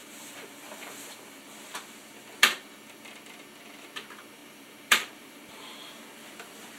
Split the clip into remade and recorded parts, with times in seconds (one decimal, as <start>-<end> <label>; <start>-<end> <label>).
0.0-1.4 remade; 1.4-4.4 recorded; 4.4-5.9 remade; 5.9-6.8 recorded